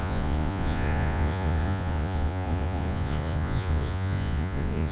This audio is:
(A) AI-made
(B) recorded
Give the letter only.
A